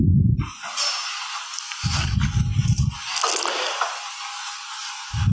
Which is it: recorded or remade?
recorded